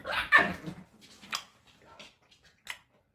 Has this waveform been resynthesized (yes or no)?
no